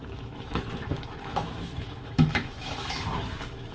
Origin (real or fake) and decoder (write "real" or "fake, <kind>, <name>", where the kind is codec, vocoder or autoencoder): fake, autoencoder, DAC-VAE